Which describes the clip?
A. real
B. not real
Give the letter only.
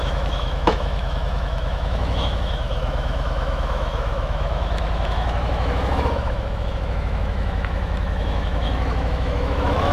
B